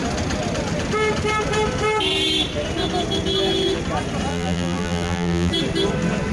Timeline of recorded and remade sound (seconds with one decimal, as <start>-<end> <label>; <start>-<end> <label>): 0.0-4.3 recorded; 4.3-5.5 remade; 5.5-6.3 recorded